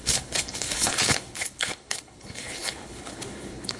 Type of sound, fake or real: fake